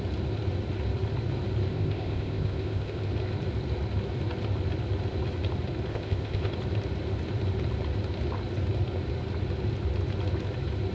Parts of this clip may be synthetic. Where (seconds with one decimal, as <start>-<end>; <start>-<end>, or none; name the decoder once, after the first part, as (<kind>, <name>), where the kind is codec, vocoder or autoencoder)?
1.7-3.1 (codec, ZipCodec); 5.9-6.5